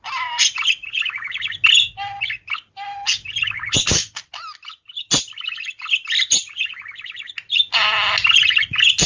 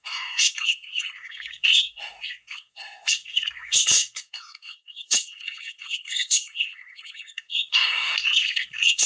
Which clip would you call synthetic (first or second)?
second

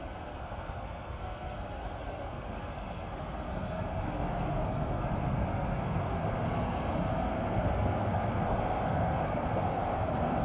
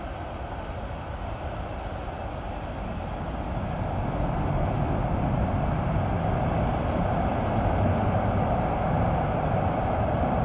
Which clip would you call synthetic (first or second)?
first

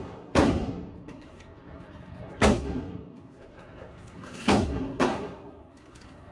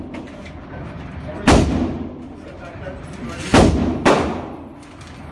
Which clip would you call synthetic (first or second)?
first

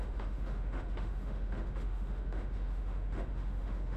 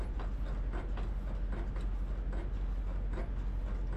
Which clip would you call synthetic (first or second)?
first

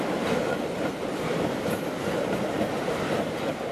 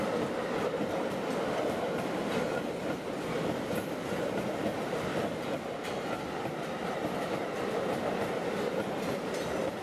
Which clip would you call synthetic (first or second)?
first